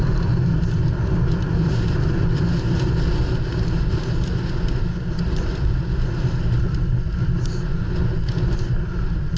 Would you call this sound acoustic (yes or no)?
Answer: yes